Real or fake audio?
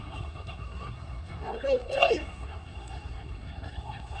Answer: fake